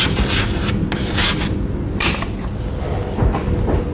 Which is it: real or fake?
real